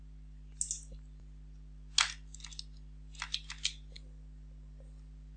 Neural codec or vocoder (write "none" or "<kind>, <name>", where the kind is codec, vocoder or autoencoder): none